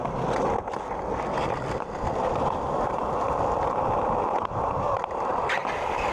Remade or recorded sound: recorded